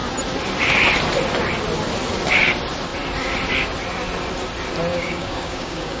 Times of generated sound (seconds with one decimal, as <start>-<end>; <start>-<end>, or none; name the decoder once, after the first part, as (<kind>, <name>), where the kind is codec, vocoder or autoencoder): 4.9-6.0 (codec, DAC)